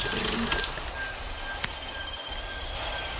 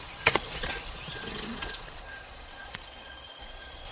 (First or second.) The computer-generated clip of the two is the second